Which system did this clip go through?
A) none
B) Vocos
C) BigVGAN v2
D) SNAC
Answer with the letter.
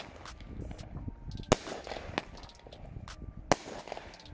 A